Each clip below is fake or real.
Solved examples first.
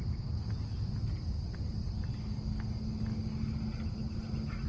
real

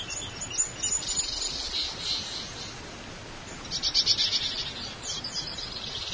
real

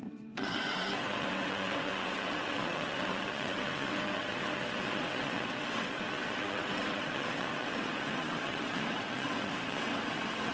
fake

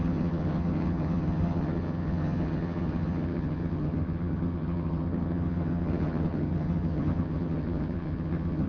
fake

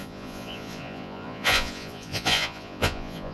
fake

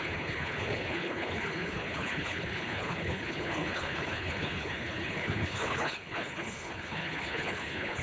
fake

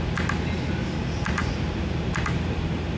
real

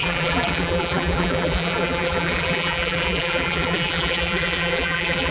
fake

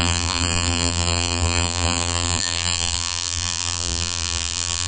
fake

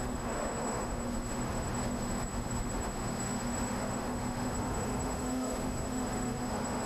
fake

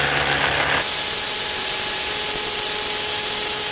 real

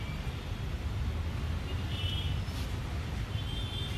real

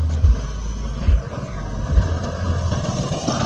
real